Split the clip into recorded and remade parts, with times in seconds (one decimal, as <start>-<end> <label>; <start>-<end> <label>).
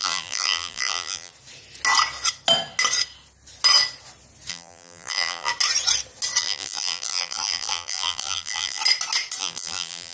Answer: 0.0-1.3 remade; 1.3-4.5 recorded; 4.5-5.5 remade; 5.5-6.4 recorded; 6.4-8.8 remade; 8.8-9.4 recorded; 9.4-10.1 remade